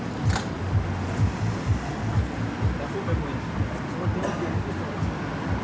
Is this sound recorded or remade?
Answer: recorded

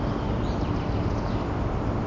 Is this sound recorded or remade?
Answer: recorded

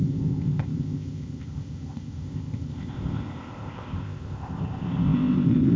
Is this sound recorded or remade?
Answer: remade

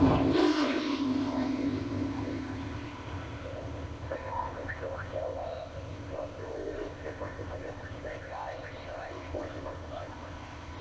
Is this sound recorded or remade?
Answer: remade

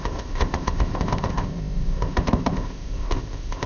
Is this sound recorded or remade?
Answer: remade